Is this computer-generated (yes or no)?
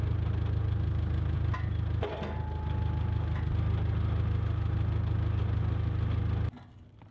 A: no